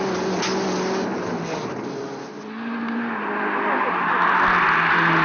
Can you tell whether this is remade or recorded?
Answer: recorded